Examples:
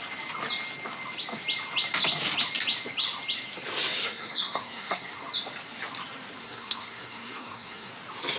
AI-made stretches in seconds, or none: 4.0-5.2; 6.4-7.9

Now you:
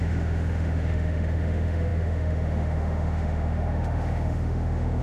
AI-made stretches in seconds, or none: 0.0-5.0